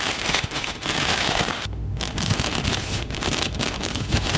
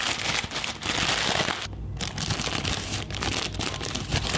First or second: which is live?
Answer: second